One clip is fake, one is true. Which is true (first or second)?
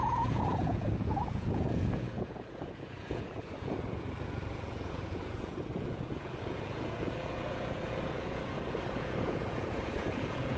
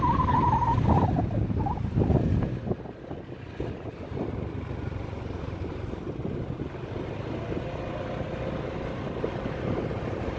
second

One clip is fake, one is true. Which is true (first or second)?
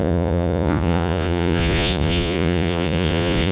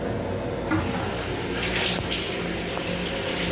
second